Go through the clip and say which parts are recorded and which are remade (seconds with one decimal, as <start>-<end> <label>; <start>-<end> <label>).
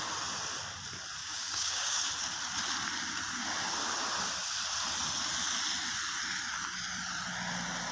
0.0-1.2 recorded; 1.2-2.1 remade; 2.1-7.9 recorded